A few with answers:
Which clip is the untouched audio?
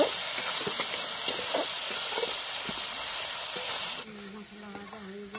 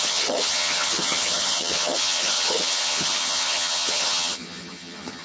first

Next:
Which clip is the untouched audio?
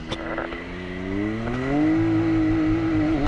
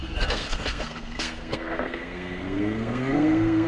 first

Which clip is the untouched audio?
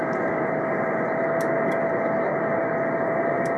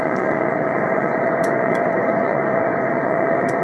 first